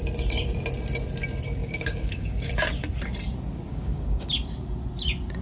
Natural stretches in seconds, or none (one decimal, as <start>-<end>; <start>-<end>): 0.0-1.6; 2.5-3.7; 4.3-5.4